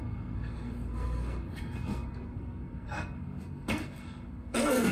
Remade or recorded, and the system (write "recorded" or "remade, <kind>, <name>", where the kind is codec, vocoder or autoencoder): remade, codec, SNAC